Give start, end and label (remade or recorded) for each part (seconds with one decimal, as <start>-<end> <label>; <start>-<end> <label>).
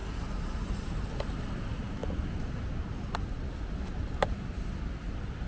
0.0-5.5 recorded